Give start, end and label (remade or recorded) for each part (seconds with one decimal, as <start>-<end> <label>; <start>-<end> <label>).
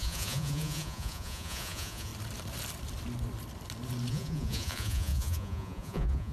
0.0-2.1 remade; 2.1-4.1 recorded; 4.1-6.3 remade